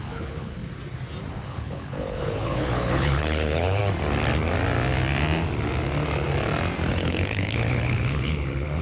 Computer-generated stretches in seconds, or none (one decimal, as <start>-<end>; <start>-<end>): 0.0-0.6; 1.3-3.8; 6.9-8.8